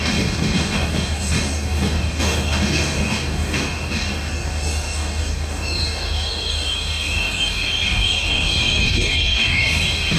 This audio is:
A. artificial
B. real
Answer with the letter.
A